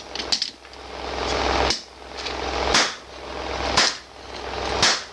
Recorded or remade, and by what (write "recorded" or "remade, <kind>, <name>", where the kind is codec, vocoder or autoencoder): recorded